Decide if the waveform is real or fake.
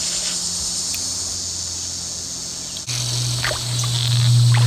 real